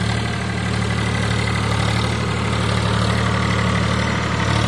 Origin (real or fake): real